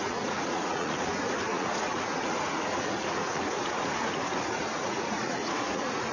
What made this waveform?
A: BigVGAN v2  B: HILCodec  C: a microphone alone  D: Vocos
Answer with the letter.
D